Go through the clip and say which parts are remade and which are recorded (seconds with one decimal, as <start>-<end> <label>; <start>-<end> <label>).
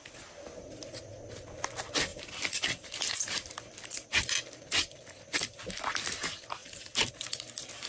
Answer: 0.0-2.1 recorded; 2.1-2.9 remade; 2.9-6.6 recorded; 6.6-7.1 remade; 7.1-7.9 recorded